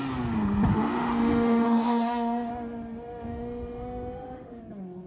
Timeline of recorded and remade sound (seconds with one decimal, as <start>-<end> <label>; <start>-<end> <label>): 0.0-0.7 recorded; 0.7-2.5 remade; 2.5-3.3 recorded; 3.3-4.6 remade; 4.6-5.1 recorded